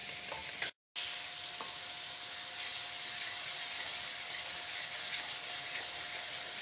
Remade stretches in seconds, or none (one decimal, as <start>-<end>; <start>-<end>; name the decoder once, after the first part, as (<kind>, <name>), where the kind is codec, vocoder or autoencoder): none

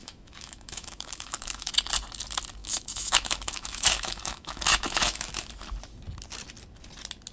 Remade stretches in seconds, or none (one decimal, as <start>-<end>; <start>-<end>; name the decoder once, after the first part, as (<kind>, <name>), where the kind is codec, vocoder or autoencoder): 0.0-1.7 (autoencoder, DAC-VAE); 2.6-5.5

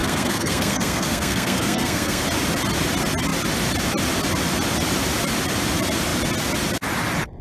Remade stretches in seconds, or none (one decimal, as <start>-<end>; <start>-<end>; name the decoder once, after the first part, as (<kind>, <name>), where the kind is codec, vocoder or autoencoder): 0.0-2.2 (codec, SNAC)

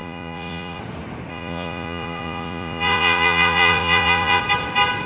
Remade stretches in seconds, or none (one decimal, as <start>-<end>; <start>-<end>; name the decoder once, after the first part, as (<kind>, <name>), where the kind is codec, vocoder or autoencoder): 0.0-0.8 (vocoder, Vocos); 1.3-4.4

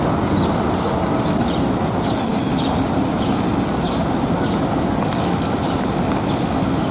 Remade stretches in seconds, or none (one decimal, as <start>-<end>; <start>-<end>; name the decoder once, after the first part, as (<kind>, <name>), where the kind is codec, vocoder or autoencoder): none

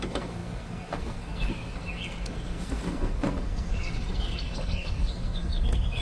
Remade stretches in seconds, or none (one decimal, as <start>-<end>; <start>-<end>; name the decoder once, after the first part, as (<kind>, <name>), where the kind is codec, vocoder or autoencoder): 0.0-6.0 (codec, SNAC)

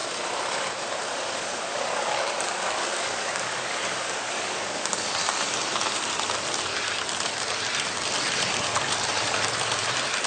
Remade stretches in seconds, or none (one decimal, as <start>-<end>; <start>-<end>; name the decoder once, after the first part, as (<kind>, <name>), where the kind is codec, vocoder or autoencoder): 1.0-5.2 (codec, DAC)

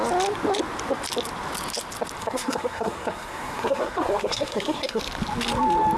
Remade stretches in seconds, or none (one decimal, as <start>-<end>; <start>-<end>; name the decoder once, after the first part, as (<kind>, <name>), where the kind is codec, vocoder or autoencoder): 2.2-5.0 (codec, SNAC)